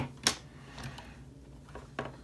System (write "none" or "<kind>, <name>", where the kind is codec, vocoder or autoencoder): none